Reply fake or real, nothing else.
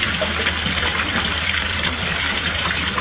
fake